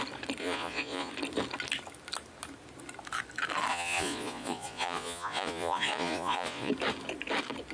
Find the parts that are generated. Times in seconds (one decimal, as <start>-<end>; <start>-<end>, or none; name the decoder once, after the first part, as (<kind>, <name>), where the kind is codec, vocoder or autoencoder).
0.4-1.1 (vocoder, Vocos); 3.7-6.7